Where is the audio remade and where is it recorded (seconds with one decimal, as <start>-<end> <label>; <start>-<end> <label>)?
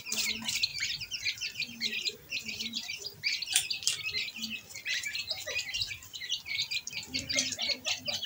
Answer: 0.0-0.7 recorded; 0.7-3.7 remade; 3.7-4.9 recorded; 4.9-6.6 remade; 6.6-8.3 recorded